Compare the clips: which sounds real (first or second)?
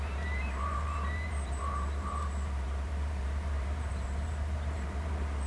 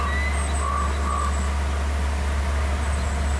second